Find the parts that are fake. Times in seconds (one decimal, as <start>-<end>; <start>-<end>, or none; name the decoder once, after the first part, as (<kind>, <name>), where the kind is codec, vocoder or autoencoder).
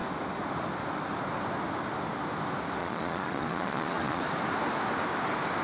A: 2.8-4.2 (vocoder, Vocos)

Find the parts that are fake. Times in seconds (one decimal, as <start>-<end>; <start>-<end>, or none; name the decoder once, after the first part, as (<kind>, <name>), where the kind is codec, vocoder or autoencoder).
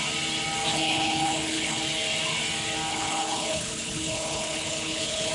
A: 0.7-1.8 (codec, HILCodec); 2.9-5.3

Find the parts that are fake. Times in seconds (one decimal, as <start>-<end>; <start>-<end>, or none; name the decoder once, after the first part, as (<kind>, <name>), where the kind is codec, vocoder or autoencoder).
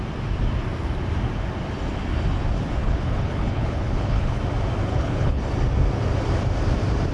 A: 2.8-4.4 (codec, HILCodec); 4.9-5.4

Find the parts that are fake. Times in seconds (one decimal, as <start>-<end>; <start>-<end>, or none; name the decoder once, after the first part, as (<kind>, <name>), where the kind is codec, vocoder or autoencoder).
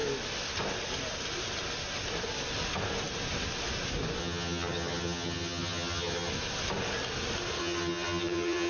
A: 4.2-6.3 (vocoder, HiFi-GAN); 7.6-8.7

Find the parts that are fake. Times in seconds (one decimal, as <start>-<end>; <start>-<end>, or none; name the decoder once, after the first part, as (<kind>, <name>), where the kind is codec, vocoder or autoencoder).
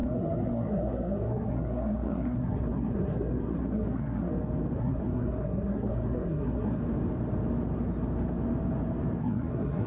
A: 0.0-4.3 (codec, SNAC); 4.8-6.8; 9.2-9.9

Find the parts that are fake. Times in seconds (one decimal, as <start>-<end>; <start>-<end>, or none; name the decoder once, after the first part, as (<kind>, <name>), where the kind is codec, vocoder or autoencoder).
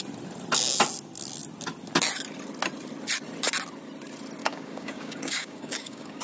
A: 4.4-6.2 (codec, DAC)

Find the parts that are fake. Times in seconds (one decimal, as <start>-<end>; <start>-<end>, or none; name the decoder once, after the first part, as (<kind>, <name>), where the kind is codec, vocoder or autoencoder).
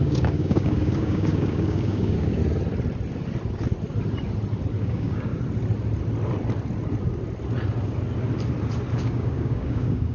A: 0.0-2.4 (codec, DAC); 4.8-5.3; 8.9-10.1